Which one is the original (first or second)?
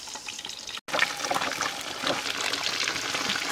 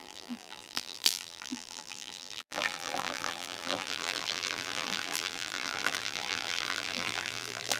first